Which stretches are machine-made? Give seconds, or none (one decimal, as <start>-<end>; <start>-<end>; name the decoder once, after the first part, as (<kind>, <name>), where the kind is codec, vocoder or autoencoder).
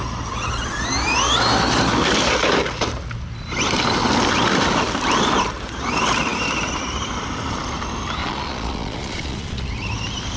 8.2-9.7 (vocoder, Vocos)